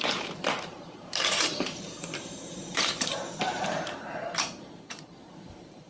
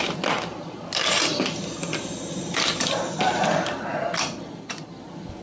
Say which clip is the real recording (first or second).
second